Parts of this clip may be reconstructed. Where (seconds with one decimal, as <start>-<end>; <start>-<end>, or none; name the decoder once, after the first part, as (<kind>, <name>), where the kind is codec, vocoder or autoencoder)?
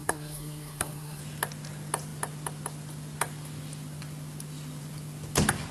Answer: 0.0-1.2 (codec, SNAC)